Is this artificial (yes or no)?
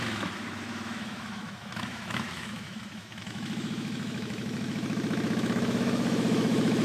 yes